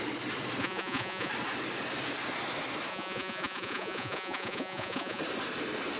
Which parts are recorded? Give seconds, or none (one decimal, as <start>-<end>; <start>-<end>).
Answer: 0.0-0.6; 1.3-2.9; 5.2-6.0

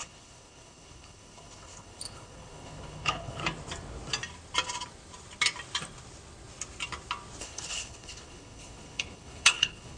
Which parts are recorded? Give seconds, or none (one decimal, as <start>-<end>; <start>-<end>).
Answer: 3.4-7.4

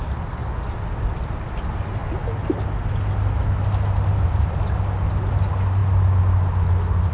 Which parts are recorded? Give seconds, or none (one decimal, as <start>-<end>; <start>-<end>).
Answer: 0.0-7.1

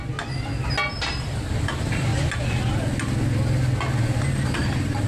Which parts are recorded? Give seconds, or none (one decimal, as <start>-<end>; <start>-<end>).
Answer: 0.0-0.9; 2.1-4.2